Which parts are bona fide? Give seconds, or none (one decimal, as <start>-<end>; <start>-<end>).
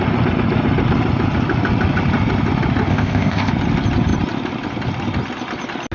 0.0-2.9; 3.5-5.9